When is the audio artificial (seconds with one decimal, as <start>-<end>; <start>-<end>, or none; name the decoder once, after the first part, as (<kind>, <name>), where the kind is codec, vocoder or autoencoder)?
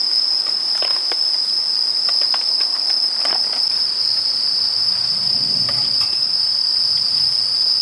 6.6-7.3 (vocoder, BigVGAN v2)